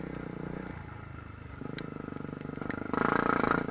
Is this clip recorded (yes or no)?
yes